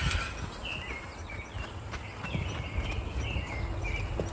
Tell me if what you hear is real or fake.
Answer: real